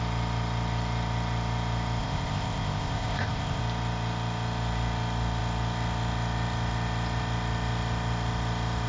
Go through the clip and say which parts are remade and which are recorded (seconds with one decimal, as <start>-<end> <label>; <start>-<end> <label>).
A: 0.0-2.0 recorded; 2.0-3.6 remade; 3.6-8.9 recorded

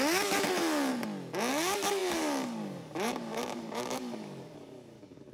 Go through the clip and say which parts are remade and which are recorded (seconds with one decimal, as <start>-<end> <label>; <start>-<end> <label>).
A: 0.0-0.9 remade; 0.9-1.5 recorded; 1.5-5.3 remade

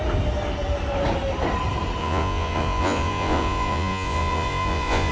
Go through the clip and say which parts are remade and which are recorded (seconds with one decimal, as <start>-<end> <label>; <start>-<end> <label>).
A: 0.0-2.0 recorded; 2.0-5.1 remade

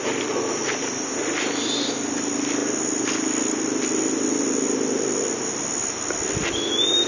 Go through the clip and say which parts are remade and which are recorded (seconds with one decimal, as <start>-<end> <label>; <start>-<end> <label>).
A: 0.0-7.1 recorded

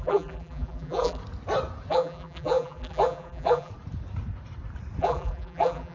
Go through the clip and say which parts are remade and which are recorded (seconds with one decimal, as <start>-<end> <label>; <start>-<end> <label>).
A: 0.0-1.2 remade; 1.2-1.9 recorded; 1.9-3.7 remade; 3.7-5.0 recorded; 5.0-5.9 remade

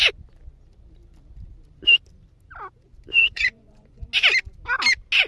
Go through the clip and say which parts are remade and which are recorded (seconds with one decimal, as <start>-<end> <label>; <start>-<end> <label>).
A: 0.0-3.2 recorded; 3.2-4.1 remade; 4.1-5.3 recorded

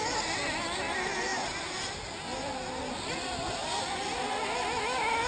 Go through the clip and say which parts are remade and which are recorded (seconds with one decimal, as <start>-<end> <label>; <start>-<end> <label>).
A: 0.0-5.3 recorded

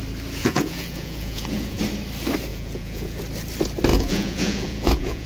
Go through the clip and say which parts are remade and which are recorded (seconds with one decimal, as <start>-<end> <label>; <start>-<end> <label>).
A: 0.0-0.4 recorded; 0.4-1.8 remade; 1.8-2.5 recorded; 2.5-3.2 remade; 3.2-3.9 recorded; 3.9-5.3 remade